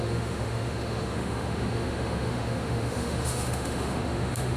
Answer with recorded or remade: remade